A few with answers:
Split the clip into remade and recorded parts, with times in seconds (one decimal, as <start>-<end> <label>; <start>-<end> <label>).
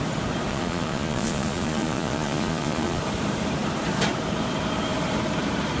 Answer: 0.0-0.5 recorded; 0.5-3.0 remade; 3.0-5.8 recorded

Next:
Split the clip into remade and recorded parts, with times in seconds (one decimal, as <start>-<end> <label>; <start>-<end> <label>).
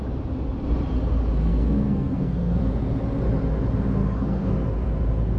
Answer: 0.0-1.5 recorded; 1.5-2.6 remade; 2.6-4.0 recorded; 4.0-4.5 remade; 4.5-5.4 recorded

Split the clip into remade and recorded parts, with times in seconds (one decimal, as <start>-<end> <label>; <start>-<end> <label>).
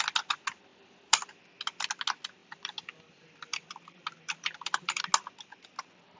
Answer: 0.0-0.7 recorded; 0.7-1.3 remade; 1.3-2.4 recorded; 2.4-5.0 remade; 5.0-6.2 recorded